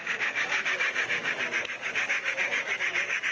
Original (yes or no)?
no